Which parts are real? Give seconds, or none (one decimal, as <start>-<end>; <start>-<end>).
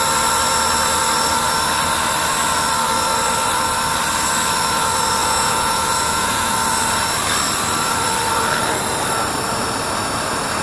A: 0.0-5.2; 6.5-10.6